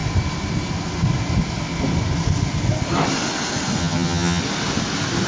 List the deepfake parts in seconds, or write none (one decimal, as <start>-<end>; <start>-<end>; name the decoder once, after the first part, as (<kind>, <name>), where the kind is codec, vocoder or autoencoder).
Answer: 3.8-4.4 (vocoder, HiFi-GAN)